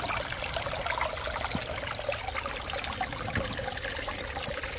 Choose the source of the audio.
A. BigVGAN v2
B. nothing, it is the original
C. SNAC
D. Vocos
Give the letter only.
B